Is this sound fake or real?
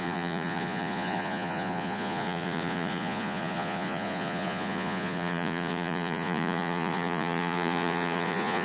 fake